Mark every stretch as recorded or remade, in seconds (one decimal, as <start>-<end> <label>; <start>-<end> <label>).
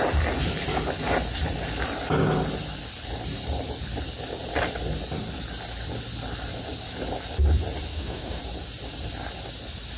0.0-7.9 recorded; 7.9-8.4 remade; 8.4-10.0 recorded